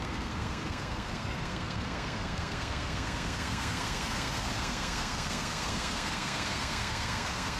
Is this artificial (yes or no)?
yes